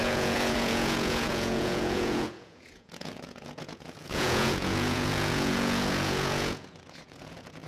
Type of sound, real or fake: fake